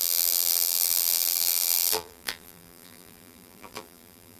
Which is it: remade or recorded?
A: remade